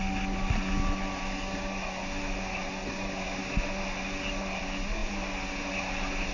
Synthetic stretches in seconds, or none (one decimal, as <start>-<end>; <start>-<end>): none